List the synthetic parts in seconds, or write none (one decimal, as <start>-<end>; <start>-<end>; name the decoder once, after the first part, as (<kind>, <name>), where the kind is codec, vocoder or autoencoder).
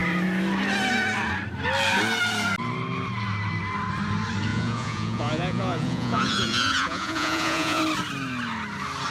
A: 4.5-7.8 (vocoder, Vocos)